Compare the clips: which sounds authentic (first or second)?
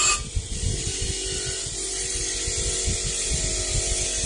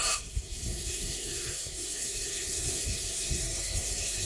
first